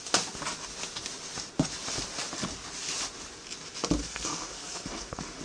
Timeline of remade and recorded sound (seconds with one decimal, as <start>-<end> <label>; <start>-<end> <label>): 0.0-4.0 recorded; 4.0-5.4 remade